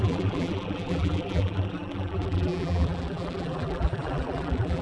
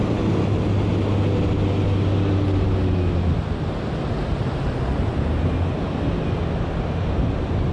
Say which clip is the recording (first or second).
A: second